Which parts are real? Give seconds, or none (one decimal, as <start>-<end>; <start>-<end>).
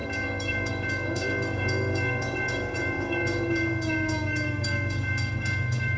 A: none